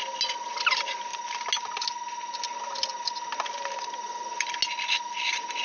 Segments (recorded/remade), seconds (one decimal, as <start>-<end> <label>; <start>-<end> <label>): 0.0-5.6 recorded